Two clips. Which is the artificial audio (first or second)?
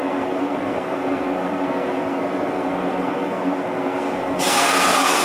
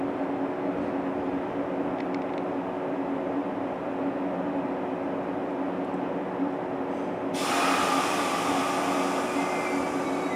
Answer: first